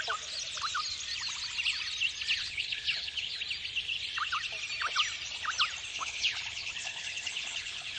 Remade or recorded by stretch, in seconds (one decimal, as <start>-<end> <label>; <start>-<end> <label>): 0.0-2.4 recorded; 2.4-3.4 remade; 3.4-5.9 recorded; 5.9-8.0 remade